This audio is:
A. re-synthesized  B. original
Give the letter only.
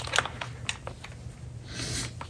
B